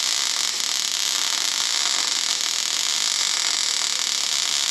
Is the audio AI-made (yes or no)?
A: no